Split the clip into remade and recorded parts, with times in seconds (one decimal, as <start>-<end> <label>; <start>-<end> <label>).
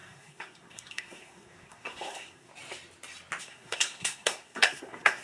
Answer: 0.0-2.5 remade; 2.5-3.4 recorded; 3.4-5.2 remade